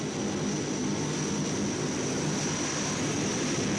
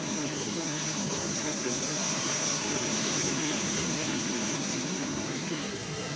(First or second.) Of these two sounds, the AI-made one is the second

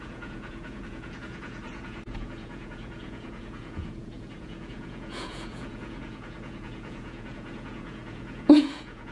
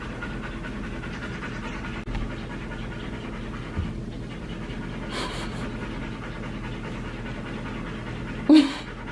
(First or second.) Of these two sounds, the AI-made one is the first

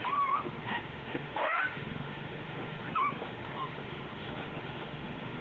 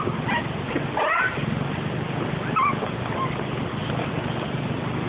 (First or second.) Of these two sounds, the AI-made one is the first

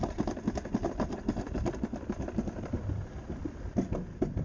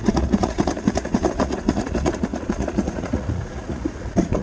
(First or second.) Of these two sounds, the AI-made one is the second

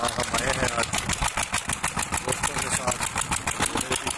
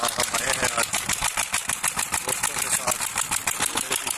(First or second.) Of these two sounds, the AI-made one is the second